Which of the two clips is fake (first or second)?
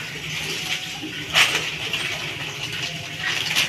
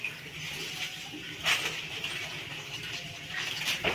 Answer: second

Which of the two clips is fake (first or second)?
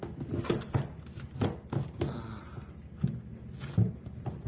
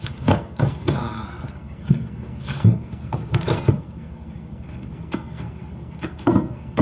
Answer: second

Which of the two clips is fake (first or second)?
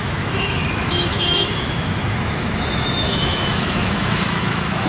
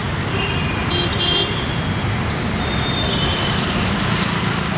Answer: first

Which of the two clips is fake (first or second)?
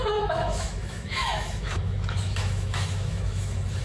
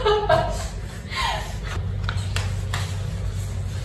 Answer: first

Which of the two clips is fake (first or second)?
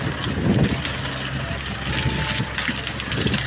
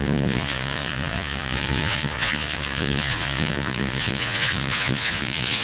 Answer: second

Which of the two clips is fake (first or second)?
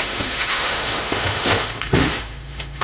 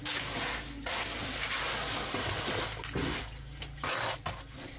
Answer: first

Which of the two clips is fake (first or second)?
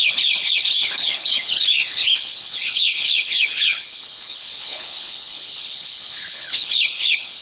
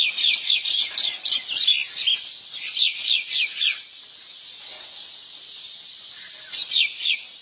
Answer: first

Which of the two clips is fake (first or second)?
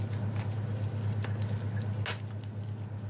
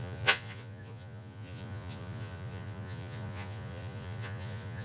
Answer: second